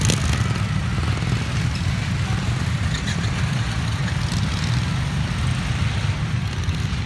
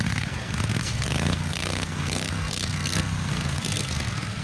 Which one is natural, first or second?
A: first